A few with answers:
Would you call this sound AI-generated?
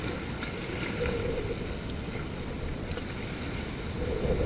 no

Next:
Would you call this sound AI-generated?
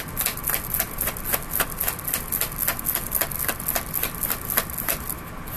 no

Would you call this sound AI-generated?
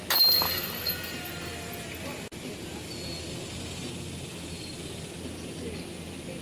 no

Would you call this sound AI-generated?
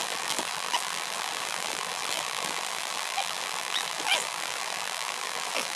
yes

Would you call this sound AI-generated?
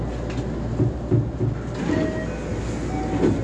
no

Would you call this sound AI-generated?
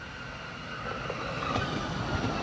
no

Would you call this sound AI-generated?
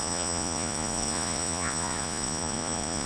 yes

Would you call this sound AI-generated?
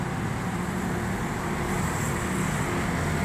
no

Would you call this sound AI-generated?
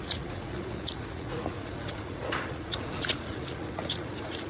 yes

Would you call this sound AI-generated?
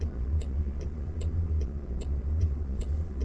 yes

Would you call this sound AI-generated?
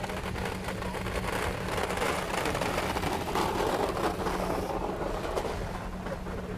no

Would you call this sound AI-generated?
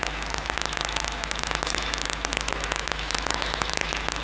yes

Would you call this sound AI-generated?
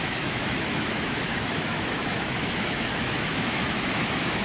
yes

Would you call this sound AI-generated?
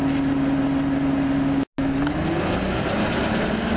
no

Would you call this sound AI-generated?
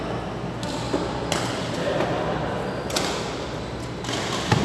no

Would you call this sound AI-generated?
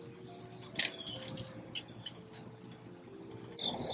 no